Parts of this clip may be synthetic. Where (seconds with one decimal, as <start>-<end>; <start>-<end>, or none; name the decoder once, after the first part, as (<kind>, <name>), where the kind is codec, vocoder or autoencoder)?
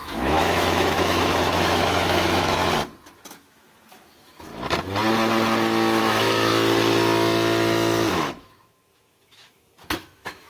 0.0-2.6 (autoencoder, DAC-VAE); 3.3-4.5; 6.0-6.5; 8.1-10.5